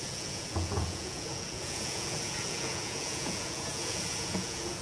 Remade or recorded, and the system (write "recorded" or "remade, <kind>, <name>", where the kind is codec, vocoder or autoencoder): remade, vocoder, Vocos